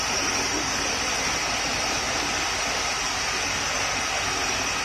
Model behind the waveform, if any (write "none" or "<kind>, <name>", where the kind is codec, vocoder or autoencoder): none